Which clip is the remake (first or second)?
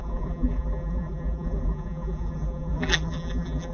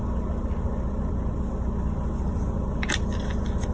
first